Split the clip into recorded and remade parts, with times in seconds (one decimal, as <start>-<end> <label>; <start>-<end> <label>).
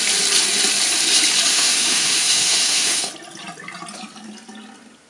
0.0-1.5 recorded; 1.5-3.1 remade; 3.1-5.1 recorded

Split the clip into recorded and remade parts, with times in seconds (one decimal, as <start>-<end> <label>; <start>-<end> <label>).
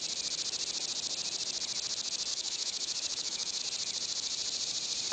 0.0-2.3 recorded; 2.3-3.6 remade; 3.6-5.1 recorded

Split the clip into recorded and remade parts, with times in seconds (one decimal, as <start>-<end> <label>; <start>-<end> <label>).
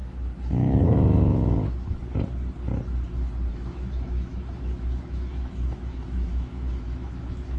0.0-2.0 remade; 2.0-3.5 recorded; 3.5-7.6 remade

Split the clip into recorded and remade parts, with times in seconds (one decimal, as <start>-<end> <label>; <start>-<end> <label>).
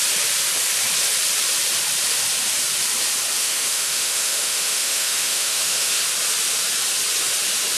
0.0-3.4 recorded; 3.4-6.0 remade; 6.0-7.8 recorded